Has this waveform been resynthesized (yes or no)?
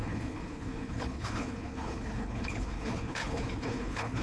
yes